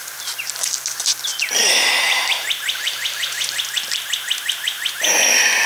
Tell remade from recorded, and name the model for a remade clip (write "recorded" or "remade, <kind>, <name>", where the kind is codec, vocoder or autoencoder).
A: recorded